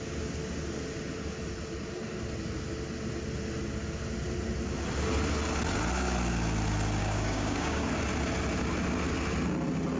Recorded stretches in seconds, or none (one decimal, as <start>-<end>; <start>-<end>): 0.0-7.0; 7.9-10.0